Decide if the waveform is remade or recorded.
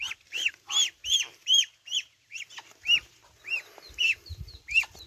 remade